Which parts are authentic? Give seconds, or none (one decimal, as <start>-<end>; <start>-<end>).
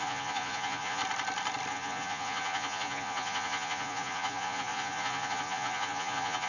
1.0-1.7